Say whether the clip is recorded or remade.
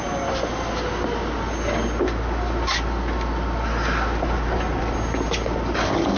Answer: recorded